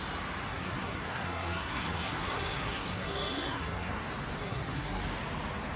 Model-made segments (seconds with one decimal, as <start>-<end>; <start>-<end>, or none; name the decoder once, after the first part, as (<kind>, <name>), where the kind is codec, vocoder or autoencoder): 0.5-4.0 (codec, SNAC); 4.4-5.0